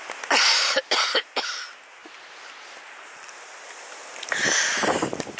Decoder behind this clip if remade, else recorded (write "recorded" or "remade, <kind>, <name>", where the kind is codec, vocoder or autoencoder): recorded